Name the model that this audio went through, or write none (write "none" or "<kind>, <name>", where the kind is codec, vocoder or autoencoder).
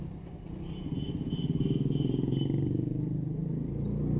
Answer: none